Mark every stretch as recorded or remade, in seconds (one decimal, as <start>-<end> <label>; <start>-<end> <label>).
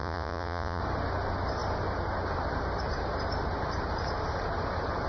0.0-0.8 remade; 0.8-5.1 recorded